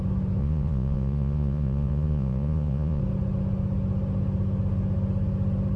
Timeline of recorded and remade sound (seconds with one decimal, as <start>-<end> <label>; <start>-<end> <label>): 0.0-0.4 recorded; 0.4-3.0 remade; 3.0-5.8 recorded